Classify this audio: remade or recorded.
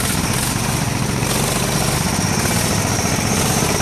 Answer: recorded